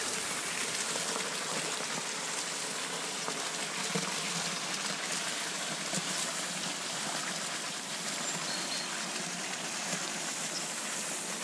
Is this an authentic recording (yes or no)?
yes